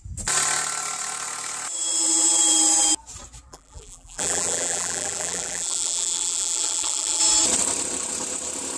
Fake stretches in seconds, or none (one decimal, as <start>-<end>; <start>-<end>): 3.5-7.2